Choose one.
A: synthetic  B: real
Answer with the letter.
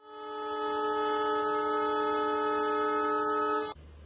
B